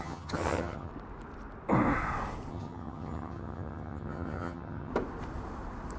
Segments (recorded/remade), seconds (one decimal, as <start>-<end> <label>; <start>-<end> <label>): 0.0-0.9 remade; 0.9-2.5 recorded; 2.5-4.9 remade; 4.9-6.0 recorded